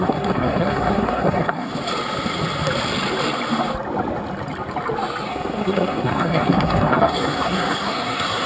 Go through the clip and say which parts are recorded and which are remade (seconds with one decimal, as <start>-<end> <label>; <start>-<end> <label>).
0.0-1.7 remade; 1.7-5.3 recorded; 5.3-8.5 remade